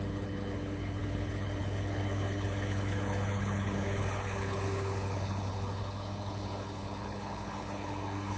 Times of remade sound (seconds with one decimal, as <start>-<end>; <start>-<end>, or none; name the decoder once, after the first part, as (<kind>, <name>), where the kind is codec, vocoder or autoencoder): 0.0-8.4 (codec, HILCodec)